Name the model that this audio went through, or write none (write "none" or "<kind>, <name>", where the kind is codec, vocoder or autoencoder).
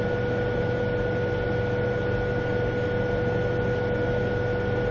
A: none